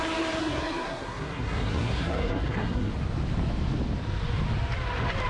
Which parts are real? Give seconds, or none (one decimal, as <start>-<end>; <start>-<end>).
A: 0.0-0.4; 2.9-5.3